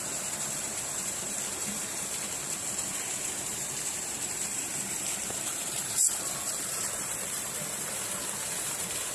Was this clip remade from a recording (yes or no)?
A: yes